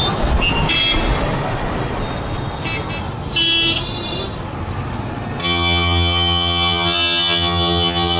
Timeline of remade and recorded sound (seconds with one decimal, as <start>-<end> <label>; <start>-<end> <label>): 0.0-5.4 recorded; 5.4-8.2 remade